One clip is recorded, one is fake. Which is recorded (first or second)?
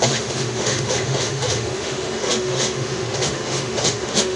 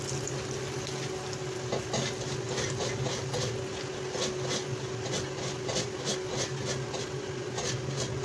second